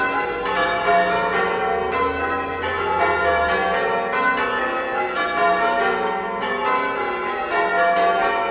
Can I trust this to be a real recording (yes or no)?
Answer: yes